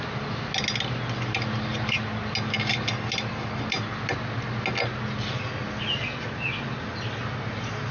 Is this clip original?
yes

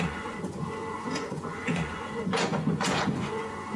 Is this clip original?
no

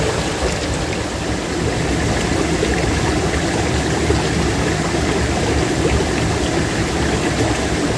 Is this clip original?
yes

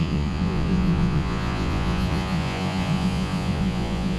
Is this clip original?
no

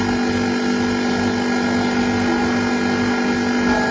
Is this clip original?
yes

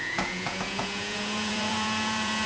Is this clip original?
no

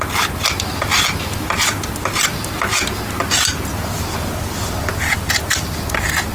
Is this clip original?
yes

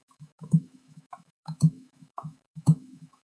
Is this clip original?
no